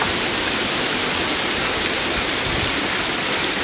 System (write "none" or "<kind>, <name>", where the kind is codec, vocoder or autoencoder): none